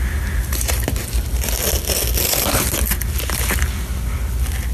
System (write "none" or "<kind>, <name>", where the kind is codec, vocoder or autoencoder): none